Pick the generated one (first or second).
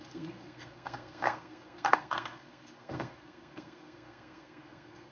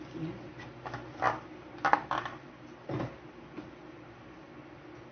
first